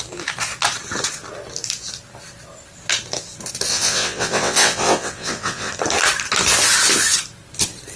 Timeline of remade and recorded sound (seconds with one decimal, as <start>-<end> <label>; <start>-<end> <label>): 0.0-3.7 recorded; 3.7-5.7 remade; 5.7-8.0 recorded